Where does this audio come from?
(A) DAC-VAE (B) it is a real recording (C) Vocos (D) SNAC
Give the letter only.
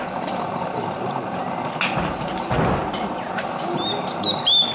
B